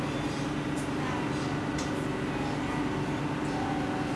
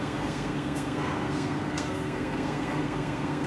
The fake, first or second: second